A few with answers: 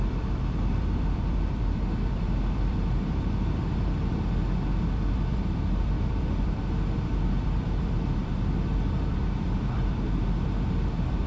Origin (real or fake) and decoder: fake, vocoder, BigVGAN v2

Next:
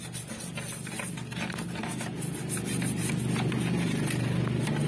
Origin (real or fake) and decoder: real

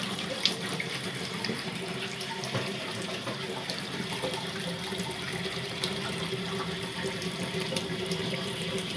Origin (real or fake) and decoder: fake, vocoder, BigVGAN v2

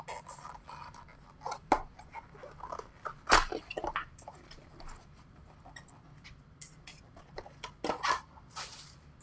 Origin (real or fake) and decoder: real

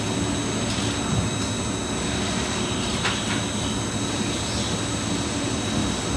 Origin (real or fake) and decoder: real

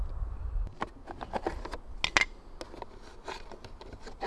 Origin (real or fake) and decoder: real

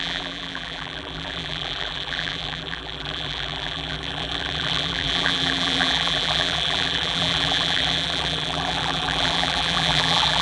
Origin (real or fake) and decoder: fake, vocoder, BigVGAN v2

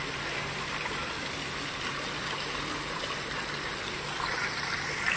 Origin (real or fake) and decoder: fake, vocoder, BigVGAN v2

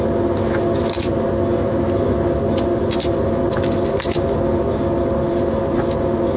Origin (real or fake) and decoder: real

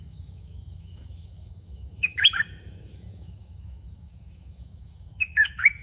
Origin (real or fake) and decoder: fake, autoencoder, DAC-VAE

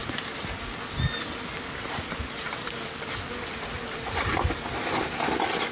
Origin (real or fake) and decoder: real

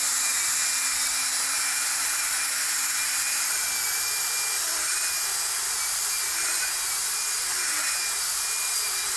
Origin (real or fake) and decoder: real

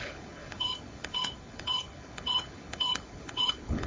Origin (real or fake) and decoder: fake, codec, HILCodec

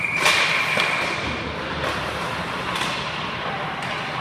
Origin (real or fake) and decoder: real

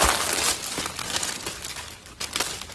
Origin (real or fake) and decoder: real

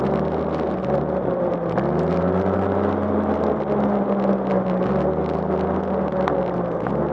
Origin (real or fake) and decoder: real